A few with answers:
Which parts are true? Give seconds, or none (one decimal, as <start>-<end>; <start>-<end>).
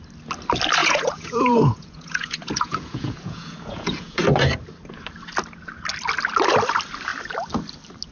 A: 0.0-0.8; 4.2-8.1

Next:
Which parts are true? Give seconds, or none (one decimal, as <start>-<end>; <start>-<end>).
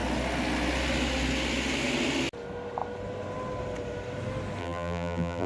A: 0.0-4.6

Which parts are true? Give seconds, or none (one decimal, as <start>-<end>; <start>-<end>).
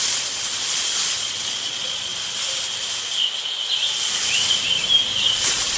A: 2.1-5.3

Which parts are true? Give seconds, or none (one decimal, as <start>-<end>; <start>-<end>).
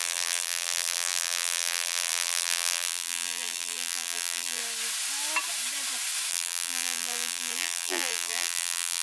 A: 4.6-6.3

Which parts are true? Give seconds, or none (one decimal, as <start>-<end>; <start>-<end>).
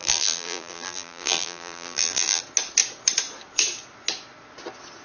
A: 2.4-5.0